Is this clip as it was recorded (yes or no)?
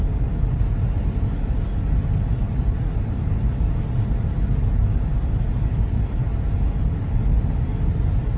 yes